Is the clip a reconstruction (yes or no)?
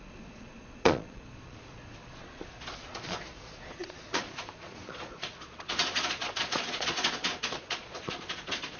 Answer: yes